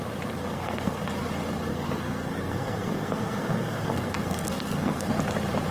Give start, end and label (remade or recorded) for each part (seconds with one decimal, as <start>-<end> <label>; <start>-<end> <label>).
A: 0.0-0.4 recorded; 0.4-1.1 remade; 1.1-1.7 recorded; 1.7-5.1 remade; 5.1-5.7 recorded